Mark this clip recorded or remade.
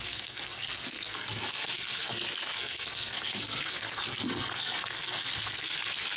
remade